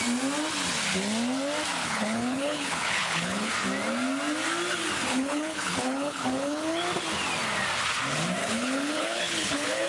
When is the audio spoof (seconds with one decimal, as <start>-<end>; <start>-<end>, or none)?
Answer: 1.8-3.5; 5.1-6.8; 8.4-9.9